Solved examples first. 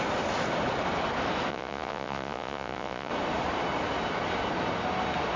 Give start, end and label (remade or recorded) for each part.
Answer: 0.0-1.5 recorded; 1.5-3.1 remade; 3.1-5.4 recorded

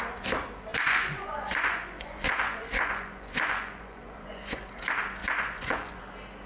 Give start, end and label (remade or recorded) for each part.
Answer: 0.0-0.7 recorded; 0.7-4.6 remade; 4.6-5.2 recorded; 5.2-6.0 remade; 6.0-6.5 recorded

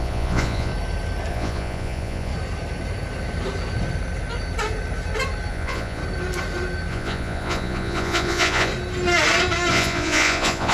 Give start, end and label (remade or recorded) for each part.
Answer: 0.0-0.7 remade; 0.7-1.3 recorded; 1.3-2.3 remade; 2.3-5.5 recorded; 5.5-6.0 remade; 6.0-6.9 recorded; 6.9-8.7 remade; 8.7-9.7 recorded; 9.7-10.7 remade

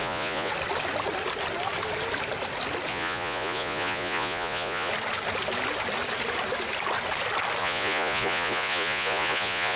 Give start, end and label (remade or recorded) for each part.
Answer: 0.0-0.5 remade; 0.5-2.9 recorded; 2.9-4.9 remade; 4.9-7.6 recorded; 7.6-9.8 remade